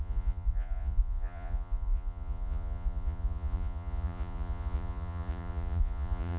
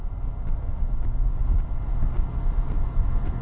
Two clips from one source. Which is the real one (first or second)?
second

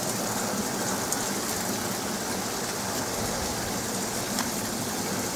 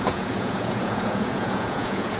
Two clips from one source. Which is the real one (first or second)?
first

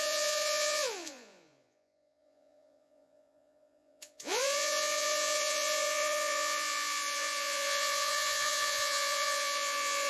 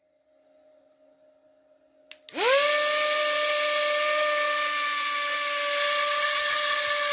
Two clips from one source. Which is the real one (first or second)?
second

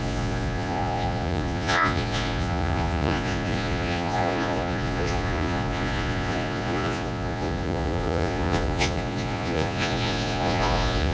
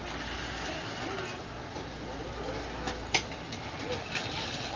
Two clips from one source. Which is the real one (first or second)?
second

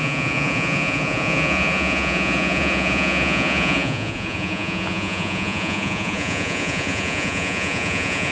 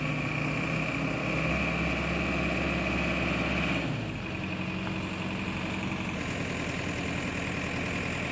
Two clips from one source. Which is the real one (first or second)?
second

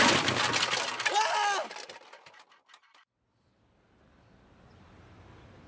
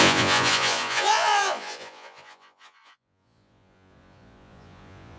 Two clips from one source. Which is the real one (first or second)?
first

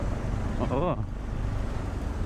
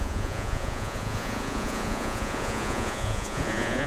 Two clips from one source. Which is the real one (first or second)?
first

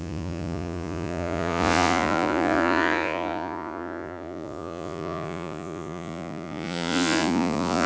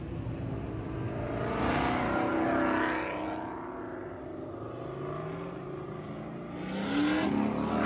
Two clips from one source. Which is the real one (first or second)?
second